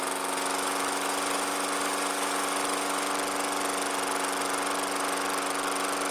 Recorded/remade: recorded